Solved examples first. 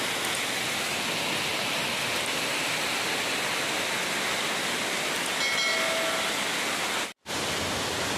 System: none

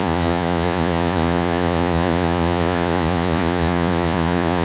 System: vocoder, Vocos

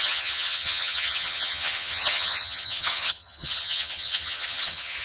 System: vocoder, HiFi-GAN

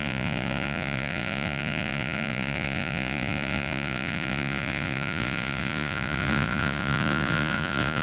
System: vocoder, Vocos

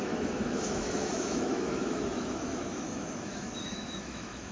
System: autoencoder, DAC-VAE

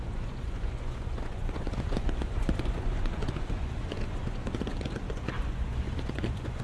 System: vocoder, Vocos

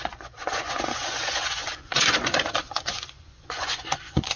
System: vocoder, Vocos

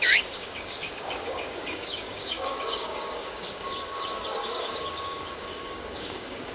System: codec, DAC